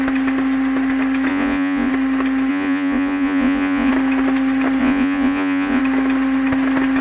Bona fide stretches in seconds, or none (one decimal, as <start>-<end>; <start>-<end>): 0.0-1.3; 1.9-2.5; 3.9-4.8; 5.8-7.0